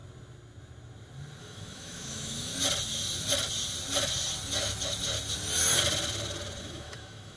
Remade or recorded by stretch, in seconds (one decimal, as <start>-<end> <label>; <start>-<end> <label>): 0.0-1.4 recorded; 1.4-2.5 remade; 2.5-6.6 recorded; 6.6-7.4 remade

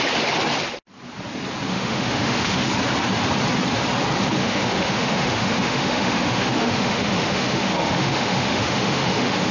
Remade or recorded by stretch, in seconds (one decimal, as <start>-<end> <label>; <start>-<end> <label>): 0.0-1.7 recorded; 1.7-2.7 remade; 2.7-4.4 recorded; 4.4-9.5 remade

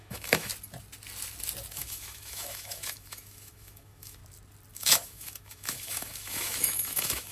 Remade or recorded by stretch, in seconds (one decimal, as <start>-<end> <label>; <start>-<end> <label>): 0.0-0.5 remade; 0.5-1.7 recorded; 1.7-4.2 remade; 4.2-4.7 recorded; 4.7-7.3 remade

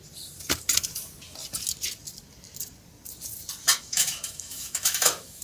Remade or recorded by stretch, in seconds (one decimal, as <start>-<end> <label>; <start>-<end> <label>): 0.0-3.7 recorded; 3.7-5.4 remade